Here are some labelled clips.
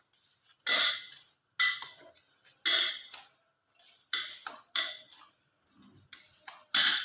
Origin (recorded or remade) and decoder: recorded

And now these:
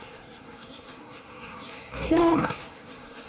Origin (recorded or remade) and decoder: remade, codec, SNAC